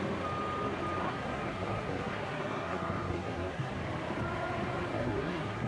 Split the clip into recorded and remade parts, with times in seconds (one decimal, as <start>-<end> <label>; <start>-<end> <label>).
0.0-1.0 recorded; 1.0-3.7 remade; 3.7-4.9 recorded; 4.9-5.7 remade